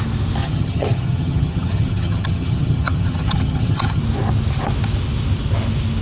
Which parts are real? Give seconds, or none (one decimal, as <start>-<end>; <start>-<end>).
0.0-0.4; 4.0-6.0